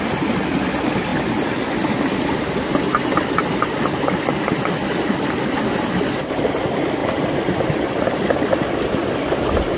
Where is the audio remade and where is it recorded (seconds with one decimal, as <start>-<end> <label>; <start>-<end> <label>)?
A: 0.0-7.0 recorded; 7.0-7.6 remade; 7.6-9.8 recorded